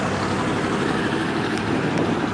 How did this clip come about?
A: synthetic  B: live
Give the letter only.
B